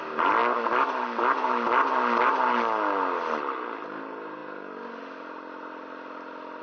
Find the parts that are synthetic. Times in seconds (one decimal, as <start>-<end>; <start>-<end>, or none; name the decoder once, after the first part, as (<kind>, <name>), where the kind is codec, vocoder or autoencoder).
none